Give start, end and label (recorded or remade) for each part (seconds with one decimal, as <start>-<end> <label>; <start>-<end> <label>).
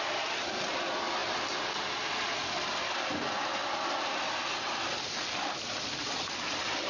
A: 0.0-6.9 recorded